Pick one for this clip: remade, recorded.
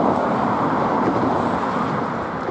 recorded